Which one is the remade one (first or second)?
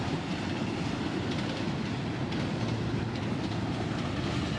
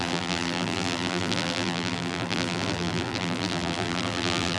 second